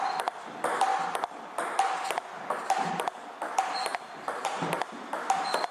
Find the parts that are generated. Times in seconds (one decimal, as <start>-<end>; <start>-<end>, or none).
none